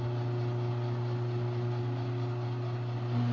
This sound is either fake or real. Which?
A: real